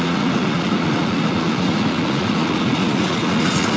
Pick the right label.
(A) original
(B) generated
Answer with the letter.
B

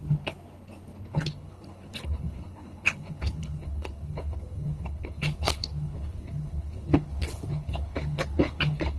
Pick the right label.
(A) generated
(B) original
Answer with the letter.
A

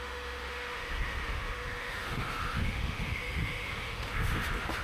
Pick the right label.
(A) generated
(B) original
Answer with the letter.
A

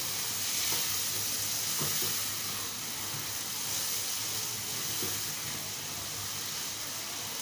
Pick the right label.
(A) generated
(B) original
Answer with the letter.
B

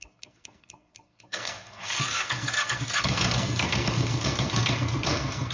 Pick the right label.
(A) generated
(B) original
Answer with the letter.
A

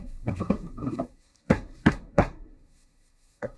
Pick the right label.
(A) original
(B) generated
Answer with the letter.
B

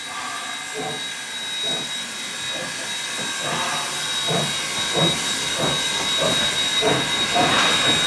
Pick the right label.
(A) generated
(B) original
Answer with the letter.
B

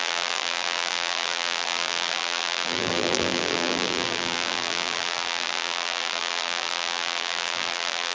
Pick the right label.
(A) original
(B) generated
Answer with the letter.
B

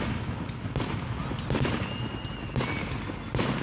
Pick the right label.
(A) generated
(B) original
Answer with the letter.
B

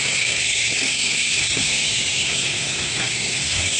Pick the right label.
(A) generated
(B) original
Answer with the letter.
A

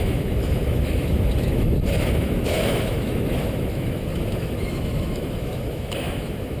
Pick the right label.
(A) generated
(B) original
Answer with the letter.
A